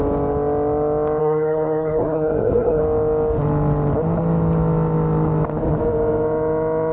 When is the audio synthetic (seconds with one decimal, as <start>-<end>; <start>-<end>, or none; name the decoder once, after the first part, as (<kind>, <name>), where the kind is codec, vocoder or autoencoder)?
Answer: 1.2-2.8 (codec, SNAC)